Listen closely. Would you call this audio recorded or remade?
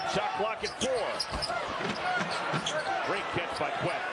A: recorded